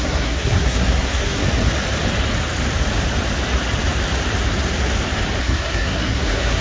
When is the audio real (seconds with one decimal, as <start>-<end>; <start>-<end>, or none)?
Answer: 1.4-5.4